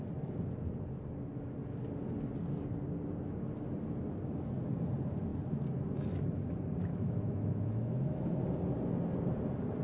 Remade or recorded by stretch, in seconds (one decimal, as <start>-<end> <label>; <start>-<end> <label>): 0.0-6.9 recorded; 6.9-8.3 remade; 8.3-9.8 recorded